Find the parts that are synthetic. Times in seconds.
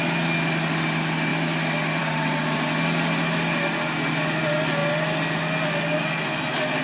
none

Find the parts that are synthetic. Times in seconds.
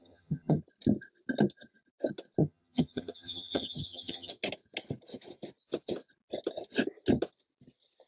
0.0-0.6 (vocoder, HiFi-GAN); 2.4-4.3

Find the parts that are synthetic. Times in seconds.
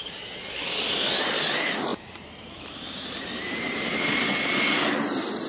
0.0-5.5 (vocoder, BigVGAN v2)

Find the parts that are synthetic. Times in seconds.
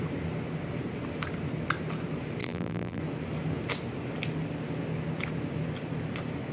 2.4-3.0 (vocoder, BigVGAN v2)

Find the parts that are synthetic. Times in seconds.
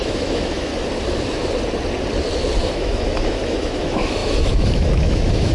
0.0-0.7 (autoencoder, DAC-VAE); 2.6-5.5